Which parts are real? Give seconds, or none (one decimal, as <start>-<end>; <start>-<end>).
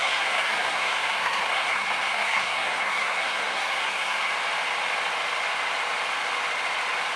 4.3-7.2